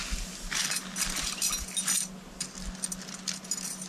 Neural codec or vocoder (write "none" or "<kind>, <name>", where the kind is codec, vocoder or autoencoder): none